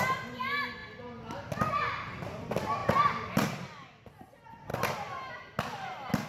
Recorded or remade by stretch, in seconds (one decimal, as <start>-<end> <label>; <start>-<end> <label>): 0.0-6.3 recorded